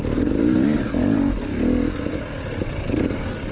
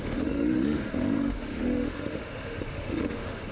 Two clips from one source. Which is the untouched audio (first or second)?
first